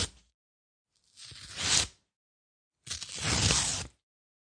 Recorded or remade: recorded